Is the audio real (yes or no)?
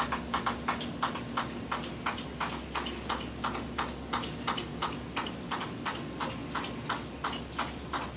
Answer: yes